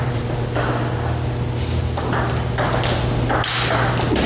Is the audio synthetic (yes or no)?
no